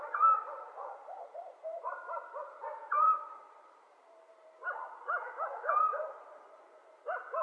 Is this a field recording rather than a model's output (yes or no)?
no